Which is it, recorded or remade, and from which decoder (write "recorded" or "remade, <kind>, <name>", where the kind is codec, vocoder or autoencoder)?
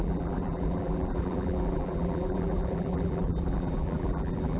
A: remade, vocoder, BigVGAN v2